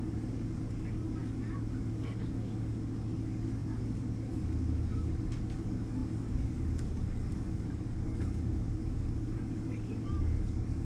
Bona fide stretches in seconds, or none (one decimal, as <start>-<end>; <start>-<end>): none

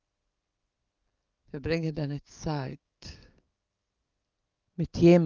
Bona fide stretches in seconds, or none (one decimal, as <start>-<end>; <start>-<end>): 0.0-1.4; 4.1-5.3

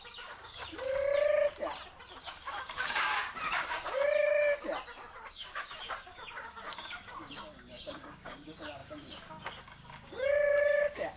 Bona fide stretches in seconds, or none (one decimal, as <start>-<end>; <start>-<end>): 0.6-2.2; 4.0-5.3